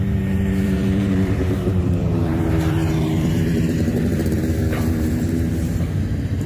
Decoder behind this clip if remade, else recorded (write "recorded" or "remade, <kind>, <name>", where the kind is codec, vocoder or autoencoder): remade, vocoder, BigVGAN v2